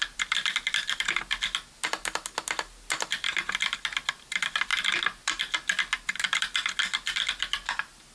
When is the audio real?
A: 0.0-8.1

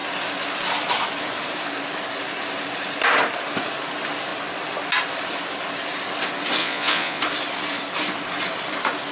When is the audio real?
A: 0.0-6.6; 7.2-9.1

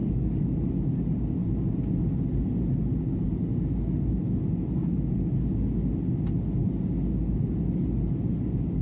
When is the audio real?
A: 0.7-8.8

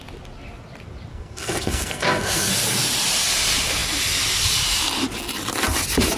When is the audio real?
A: 0.0-1.1; 2.5-6.2

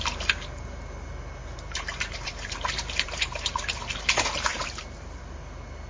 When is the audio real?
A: 0.0-1.4; 3.7-4.5; 5.2-5.9

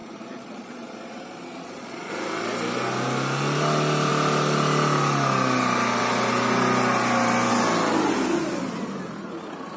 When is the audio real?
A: 2.1-9.8

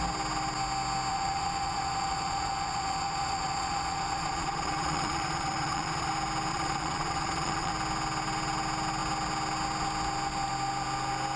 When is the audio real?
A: 0.0-1.1; 6.1-6.5; 7.7-11.4

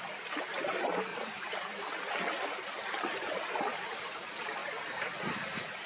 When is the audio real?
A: 0.0-1.1; 2.1-4.6